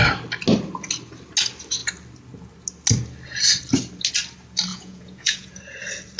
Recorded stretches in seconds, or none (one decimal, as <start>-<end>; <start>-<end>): 0.0-4.7; 5.6-6.2